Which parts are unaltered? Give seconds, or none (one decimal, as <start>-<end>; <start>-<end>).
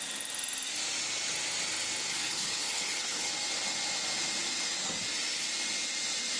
0.0-2.1; 3.3-6.4